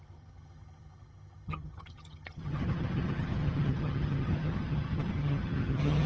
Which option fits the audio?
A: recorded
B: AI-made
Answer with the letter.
B